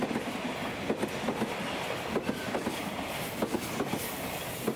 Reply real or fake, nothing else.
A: real